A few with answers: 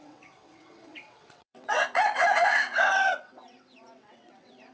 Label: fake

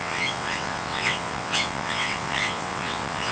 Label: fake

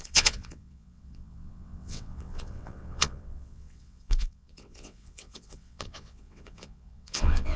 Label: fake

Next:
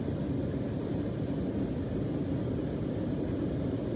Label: real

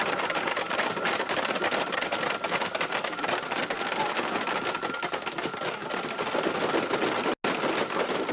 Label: real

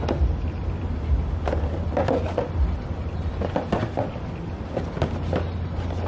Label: real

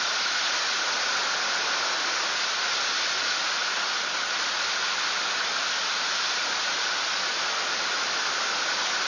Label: real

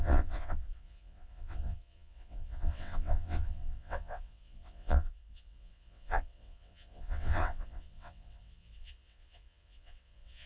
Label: fake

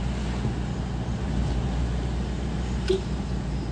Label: real